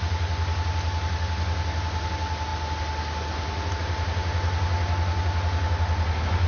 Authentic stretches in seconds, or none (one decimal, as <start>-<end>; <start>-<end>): 0.0-6.5